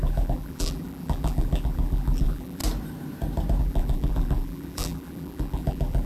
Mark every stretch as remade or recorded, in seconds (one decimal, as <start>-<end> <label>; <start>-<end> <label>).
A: 0.0-2.6 remade; 2.6-3.6 recorded; 3.6-6.1 remade